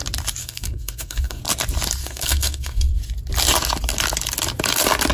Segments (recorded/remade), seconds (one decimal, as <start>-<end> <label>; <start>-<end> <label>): 0.0-0.4 recorded; 0.4-1.4 remade; 1.4-2.0 recorded; 2.0-3.0 remade; 3.0-5.1 recorded